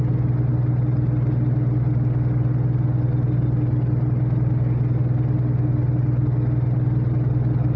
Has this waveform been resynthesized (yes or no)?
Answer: no